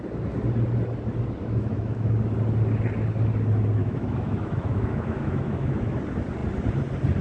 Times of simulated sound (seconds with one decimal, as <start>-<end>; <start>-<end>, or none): 1.4-2.1; 3.8-6.0